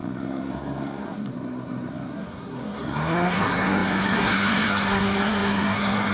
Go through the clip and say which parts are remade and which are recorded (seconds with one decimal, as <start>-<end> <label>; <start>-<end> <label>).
0.0-6.1 remade